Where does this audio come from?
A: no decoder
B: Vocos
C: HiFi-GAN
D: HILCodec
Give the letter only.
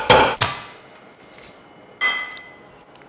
A